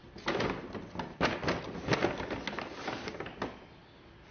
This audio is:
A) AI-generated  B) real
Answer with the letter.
B